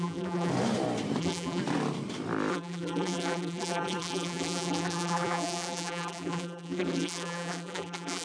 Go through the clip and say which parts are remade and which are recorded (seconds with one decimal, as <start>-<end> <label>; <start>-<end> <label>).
0.0-0.5 remade; 0.5-1.2 recorded; 1.2-1.6 remade; 1.6-2.5 recorded; 2.5-8.2 remade